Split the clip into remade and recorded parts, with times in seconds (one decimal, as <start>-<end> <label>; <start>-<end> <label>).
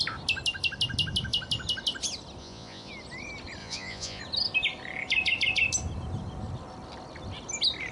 0.0-2.4 recorded; 2.4-2.9 remade; 2.9-3.6 recorded; 3.6-4.2 remade; 4.2-7.9 recorded